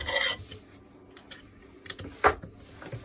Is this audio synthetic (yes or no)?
no